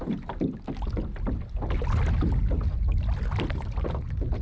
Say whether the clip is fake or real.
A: real